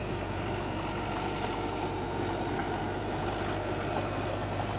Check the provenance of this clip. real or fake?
real